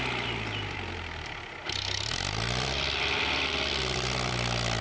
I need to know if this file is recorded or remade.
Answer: remade